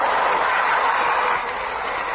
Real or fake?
real